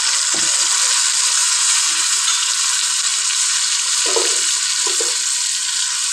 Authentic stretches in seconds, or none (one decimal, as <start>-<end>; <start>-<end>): 0.0-1.4; 2.5-6.1